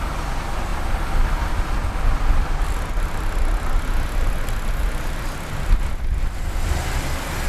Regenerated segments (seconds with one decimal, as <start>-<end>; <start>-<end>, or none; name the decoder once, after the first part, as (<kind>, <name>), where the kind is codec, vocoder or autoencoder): none